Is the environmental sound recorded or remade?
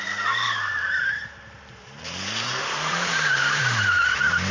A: remade